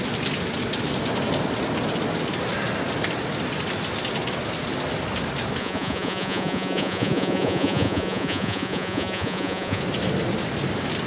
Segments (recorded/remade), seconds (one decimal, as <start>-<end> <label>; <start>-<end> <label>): 0.0-5.6 recorded; 5.6-9.8 remade; 9.8-11.1 recorded